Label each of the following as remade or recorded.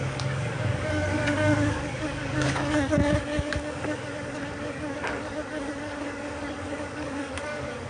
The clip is remade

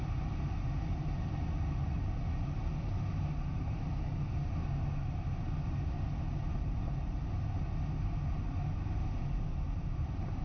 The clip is recorded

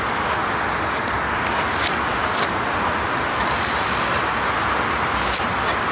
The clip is recorded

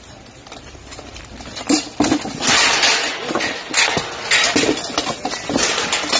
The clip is recorded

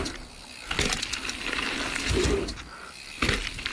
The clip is recorded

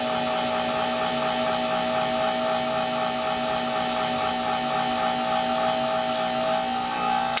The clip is recorded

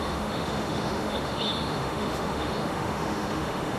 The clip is remade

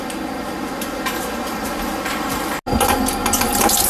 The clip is recorded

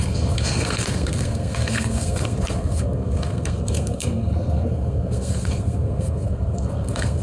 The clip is remade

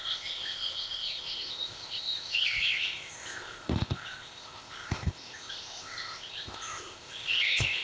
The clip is remade